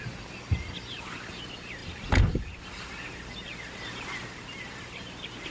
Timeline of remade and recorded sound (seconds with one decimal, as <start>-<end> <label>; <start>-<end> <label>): 0.0-5.5 remade